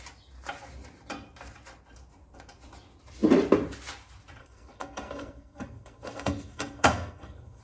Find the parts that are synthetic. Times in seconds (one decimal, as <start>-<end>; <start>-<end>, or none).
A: 4.4-7.6